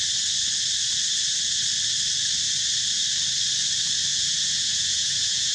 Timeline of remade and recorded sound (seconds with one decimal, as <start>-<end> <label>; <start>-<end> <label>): 0.0-4.1 recorded; 4.1-5.5 remade